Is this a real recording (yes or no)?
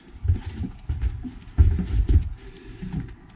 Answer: yes